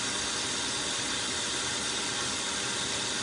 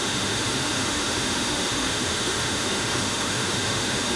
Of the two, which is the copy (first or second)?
second